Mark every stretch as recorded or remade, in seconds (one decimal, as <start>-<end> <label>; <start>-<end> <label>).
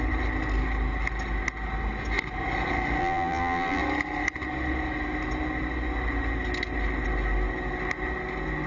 0.0-3.0 recorded; 3.0-3.8 remade; 3.8-8.7 recorded